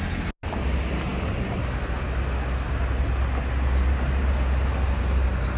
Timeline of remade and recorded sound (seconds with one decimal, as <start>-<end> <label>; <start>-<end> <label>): 0.0-5.6 recorded